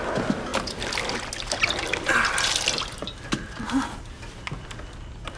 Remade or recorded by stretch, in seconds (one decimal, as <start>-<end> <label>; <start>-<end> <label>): 0.0-5.4 recorded